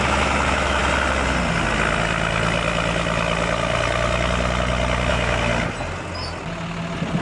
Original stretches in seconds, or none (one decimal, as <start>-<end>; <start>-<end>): 0.8-5.1; 5.5-7.2